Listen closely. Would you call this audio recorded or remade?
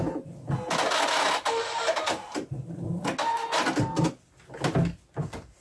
recorded